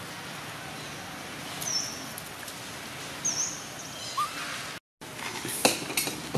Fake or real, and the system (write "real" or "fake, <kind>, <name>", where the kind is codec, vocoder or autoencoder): real